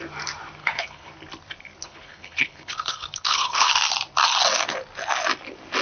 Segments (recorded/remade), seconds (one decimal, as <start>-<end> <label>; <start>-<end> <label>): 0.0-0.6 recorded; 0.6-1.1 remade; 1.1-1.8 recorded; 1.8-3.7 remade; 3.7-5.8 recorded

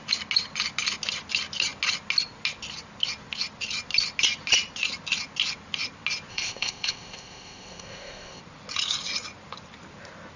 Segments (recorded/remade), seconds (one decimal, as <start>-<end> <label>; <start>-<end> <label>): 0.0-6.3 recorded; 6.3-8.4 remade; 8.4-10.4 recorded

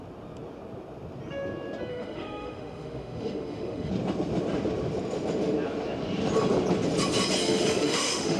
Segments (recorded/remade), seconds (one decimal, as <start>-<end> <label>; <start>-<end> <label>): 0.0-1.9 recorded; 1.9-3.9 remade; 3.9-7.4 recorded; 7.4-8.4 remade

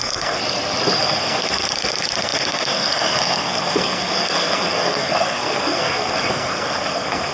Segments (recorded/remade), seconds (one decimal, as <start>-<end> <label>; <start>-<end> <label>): 0.0-0.4 remade; 0.4-1.0 recorded; 1.0-7.3 remade

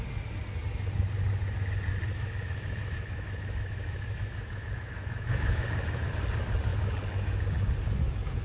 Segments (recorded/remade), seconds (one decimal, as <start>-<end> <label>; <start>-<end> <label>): 0.0-2.1 recorded; 2.1-6.1 remade; 6.1-6.7 recorded; 6.7-7.4 remade; 7.4-8.4 recorded